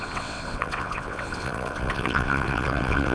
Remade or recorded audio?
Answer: remade